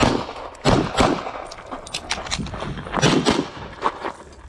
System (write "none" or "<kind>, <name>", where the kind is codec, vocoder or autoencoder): none